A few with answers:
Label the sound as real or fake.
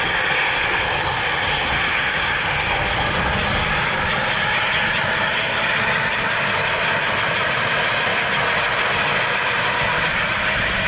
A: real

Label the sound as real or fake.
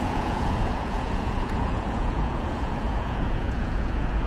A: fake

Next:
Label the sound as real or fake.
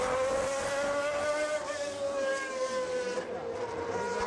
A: real